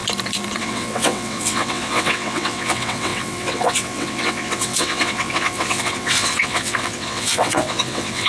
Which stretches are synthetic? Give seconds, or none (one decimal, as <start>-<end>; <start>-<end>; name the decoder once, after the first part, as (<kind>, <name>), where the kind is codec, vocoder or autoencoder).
0.6-8.3 (vocoder, WaveNeXt)